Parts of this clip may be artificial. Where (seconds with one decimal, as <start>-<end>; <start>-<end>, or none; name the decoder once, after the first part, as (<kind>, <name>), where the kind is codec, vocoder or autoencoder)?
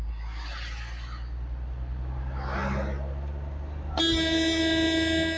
none